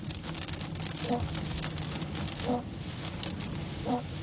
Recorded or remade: recorded